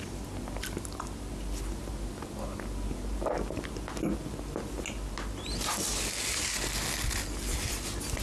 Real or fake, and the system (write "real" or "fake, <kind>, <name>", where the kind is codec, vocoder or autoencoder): real